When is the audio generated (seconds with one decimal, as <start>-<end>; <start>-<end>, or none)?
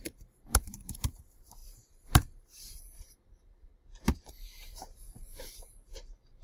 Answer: 0.0-3.7; 4.3-6.4